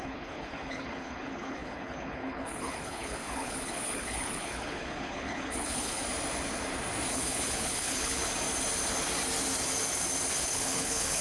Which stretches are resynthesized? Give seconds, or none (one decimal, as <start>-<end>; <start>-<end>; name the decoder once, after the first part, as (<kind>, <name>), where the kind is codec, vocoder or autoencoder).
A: 0.0-6.0 (codec, HILCodec); 7.1-8.3; 10.3-11.2